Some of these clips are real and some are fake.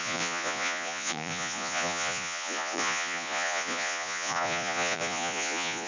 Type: fake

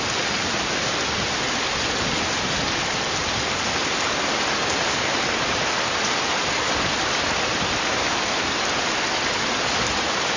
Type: real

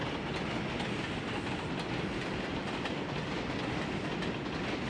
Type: real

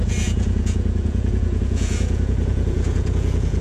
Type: fake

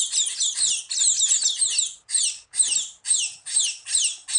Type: real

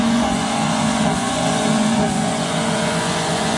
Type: fake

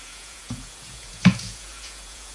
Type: fake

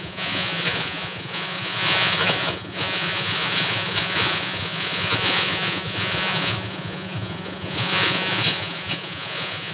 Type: fake